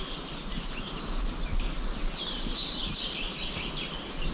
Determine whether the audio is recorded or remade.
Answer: recorded